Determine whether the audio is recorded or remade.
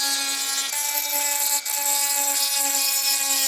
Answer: recorded